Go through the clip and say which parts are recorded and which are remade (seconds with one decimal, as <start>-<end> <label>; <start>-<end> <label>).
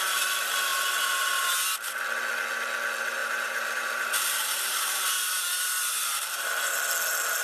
0.0-3.2 recorded; 3.2-5.4 remade; 5.4-7.4 recorded